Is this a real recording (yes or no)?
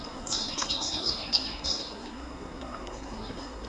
no